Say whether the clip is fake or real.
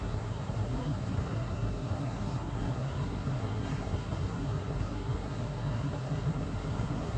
fake